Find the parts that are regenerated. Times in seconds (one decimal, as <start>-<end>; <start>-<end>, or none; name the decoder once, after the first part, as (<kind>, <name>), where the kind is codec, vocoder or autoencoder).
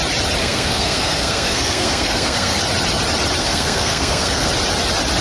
0.4-2.6 (codec, SNAC); 3.4-4.5